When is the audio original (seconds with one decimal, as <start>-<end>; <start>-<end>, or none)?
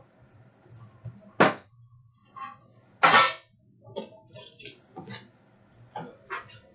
0.0-6.7